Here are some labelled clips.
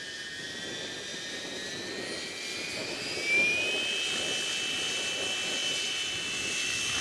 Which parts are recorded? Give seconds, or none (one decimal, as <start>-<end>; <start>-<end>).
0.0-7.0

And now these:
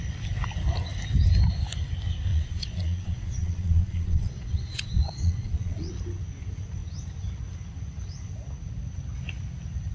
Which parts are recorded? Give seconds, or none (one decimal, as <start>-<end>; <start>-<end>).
0.0-2.3; 5.9-9.9

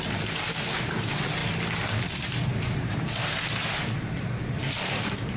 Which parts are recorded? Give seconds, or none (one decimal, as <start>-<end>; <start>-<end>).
1.4-2.0

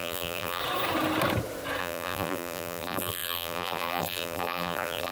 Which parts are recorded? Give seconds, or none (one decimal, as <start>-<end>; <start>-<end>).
0.6-1.8